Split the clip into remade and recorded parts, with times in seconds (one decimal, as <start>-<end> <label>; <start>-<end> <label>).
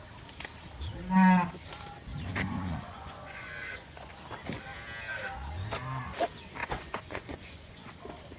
0.0-2.3 recorded; 2.3-4.1 remade; 4.1-6.6 recorded; 6.6-7.9 remade; 7.9-8.4 recorded